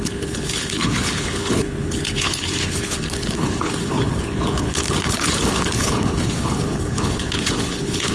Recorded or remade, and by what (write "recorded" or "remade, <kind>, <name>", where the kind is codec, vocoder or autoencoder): remade, codec, HILCodec